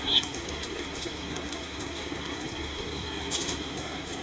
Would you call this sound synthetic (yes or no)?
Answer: yes